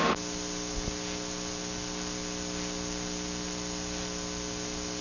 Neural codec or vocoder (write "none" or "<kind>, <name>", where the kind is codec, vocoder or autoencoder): none